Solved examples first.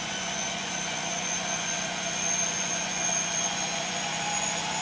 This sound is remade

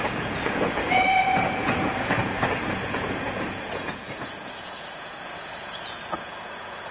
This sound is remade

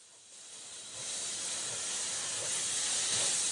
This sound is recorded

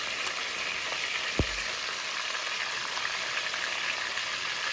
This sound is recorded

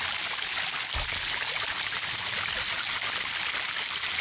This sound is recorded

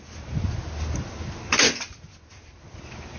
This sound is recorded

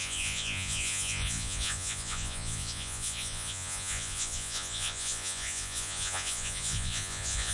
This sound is remade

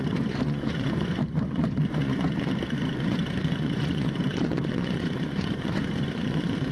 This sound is remade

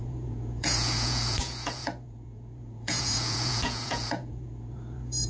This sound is remade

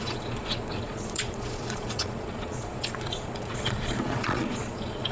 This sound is remade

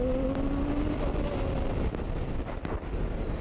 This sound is recorded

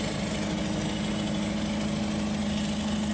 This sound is recorded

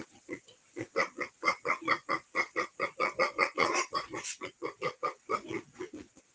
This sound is remade